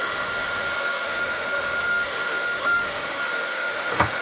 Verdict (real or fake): fake